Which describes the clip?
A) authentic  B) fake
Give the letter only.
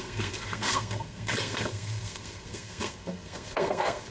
B